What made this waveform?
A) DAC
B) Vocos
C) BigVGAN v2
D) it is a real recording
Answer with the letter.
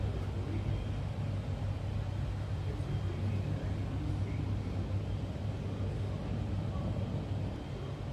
D